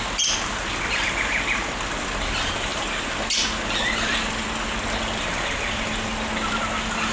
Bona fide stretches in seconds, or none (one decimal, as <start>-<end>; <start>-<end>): 0.0-7.1